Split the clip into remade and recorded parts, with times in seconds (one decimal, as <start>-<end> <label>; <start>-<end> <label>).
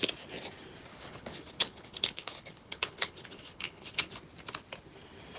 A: 0.0-0.9 recorded; 0.9-4.1 remade; 4.1-5.4 recorded